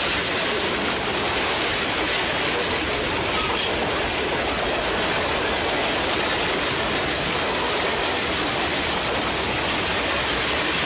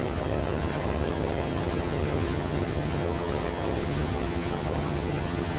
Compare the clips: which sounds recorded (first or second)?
first